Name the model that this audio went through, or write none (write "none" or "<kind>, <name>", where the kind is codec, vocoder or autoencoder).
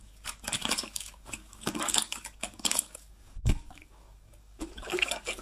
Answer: codec, DAC